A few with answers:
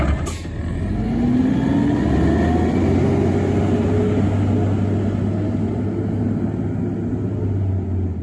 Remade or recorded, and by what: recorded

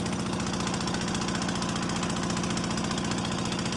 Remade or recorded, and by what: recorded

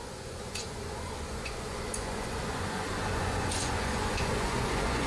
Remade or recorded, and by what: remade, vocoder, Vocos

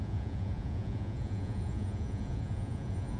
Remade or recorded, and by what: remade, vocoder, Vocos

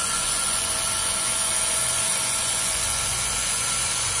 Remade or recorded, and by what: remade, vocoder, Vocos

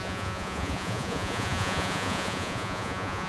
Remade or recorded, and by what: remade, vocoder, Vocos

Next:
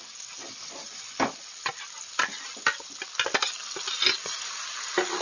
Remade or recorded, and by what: recorded